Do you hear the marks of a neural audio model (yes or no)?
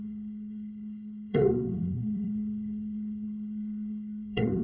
yes